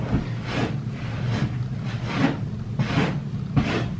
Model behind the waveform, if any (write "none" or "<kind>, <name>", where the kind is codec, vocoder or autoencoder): none